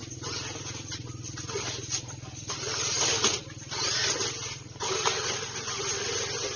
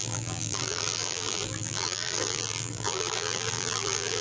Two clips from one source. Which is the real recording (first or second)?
first